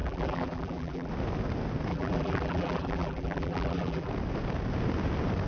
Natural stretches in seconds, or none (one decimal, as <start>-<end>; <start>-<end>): 1.1-1.9; 4.1-5.5